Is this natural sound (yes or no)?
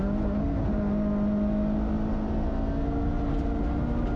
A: yes